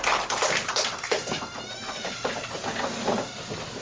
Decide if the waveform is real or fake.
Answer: real